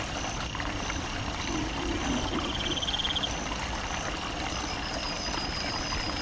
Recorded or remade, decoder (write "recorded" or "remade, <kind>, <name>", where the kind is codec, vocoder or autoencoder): recorded